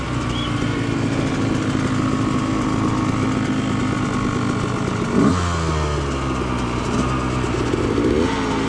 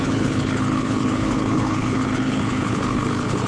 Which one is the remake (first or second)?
second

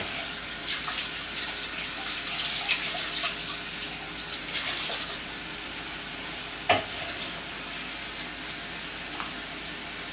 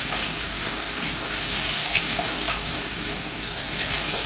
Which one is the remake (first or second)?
second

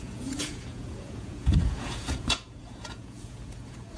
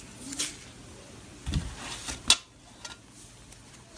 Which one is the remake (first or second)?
first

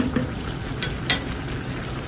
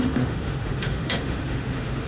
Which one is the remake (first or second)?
second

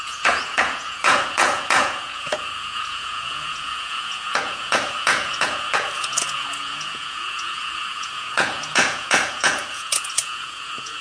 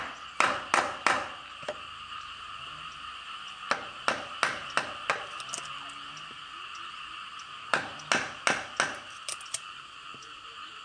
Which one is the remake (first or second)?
first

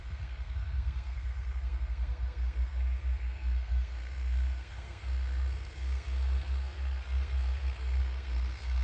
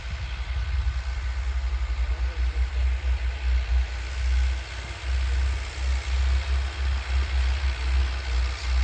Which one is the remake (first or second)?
first